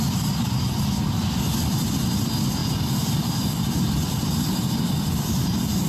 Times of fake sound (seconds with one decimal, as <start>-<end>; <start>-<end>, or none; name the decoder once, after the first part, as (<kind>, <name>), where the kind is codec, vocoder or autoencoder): 2.6-5.2 (vocoder, BigVGAN v2)